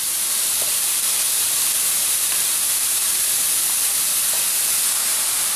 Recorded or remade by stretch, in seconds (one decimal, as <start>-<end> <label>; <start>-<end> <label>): 0.0-3.4 remade; 3.4-5.6 recorded